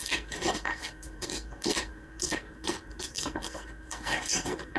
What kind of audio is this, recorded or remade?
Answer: remade